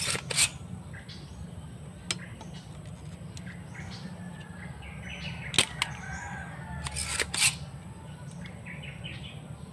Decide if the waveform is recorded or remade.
recorded